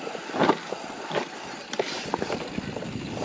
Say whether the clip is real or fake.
fake